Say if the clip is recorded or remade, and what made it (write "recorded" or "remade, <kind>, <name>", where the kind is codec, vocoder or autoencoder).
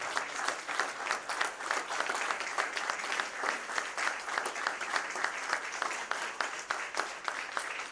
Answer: recorded